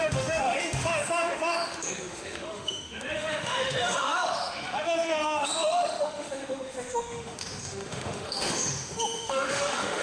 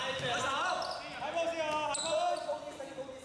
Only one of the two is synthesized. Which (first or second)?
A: first